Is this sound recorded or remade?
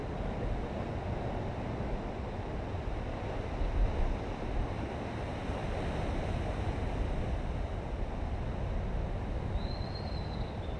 recorded